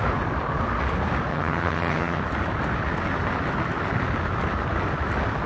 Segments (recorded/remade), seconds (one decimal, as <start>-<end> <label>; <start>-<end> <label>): 0.0-1.3 recorded; 1.3-2.2 remade; 2.2-5.5 recorded